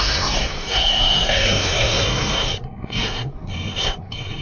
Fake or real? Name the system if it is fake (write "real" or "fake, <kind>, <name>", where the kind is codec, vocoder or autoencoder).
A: fake, codec, SNAC